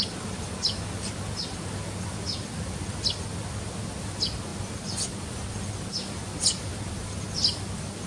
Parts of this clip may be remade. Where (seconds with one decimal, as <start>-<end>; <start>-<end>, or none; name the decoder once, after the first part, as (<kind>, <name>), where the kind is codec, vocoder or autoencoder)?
none

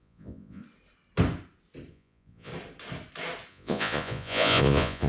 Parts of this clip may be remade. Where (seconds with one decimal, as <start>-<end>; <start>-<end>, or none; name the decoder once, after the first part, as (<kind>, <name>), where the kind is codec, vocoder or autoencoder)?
0.0-0.6 (vocoder, Vocos); 1.9-2.5; 3.5-5.1